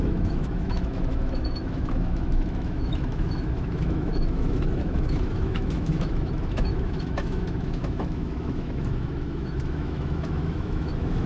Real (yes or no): no